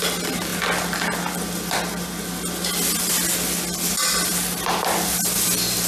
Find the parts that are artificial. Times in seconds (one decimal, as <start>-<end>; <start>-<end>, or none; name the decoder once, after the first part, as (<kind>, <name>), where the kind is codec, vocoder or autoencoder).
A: none